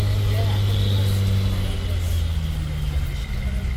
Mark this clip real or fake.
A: real